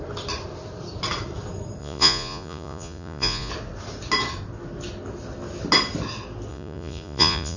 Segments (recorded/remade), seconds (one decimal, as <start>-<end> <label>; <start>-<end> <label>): 0.0-1.8 recorded; 1.8-3.5 remade; 3.5-6.5 recorded; 6.5-7.6 remade